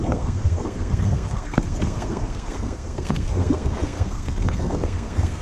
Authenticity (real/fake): fake